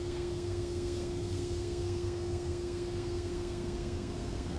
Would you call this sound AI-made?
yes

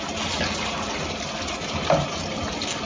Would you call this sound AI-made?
no